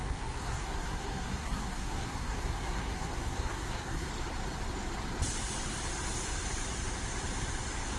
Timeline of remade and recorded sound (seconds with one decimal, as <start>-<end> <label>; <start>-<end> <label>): 0.0-4.1 remade; 4.1-8.0 recorded